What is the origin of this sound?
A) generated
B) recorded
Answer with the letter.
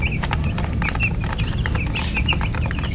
B